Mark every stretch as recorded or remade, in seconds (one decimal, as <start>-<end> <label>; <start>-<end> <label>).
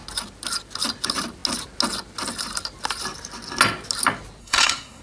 0.0-4.4 recorded; 4.4-5.0 remade